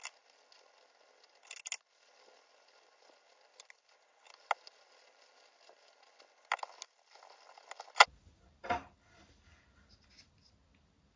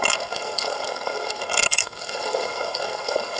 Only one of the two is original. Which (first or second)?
first